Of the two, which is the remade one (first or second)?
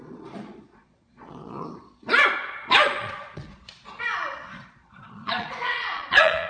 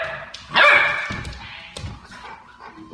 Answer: first